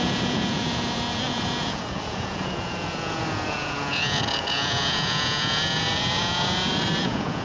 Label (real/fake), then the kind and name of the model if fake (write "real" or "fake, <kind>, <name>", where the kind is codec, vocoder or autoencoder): fake, vocoder, Vocos